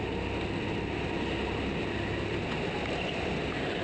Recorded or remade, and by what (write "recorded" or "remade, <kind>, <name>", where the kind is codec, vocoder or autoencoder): recorded